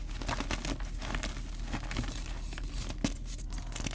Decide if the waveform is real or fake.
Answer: real